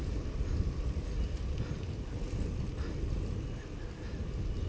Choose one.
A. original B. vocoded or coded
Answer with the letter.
A